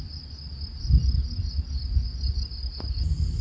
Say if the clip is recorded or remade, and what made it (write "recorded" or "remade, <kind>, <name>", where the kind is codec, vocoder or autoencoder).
recorded